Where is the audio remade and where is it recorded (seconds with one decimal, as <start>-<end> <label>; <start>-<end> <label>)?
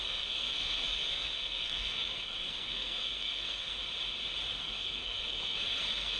0.0-3.8 remade; 3.8-4.6 recorded; 4.6-6.2 remade